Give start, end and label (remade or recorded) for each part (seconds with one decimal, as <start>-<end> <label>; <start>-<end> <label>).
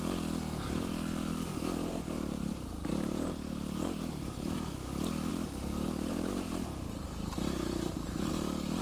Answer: 0.0-1.5 recorded; 1.5-4.7 remade; 4.7-5.3 recorded; 5.3-8.3 remade; 8.3-8.8 recorded